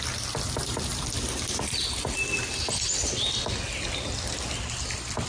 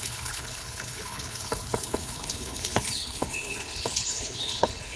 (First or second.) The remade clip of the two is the second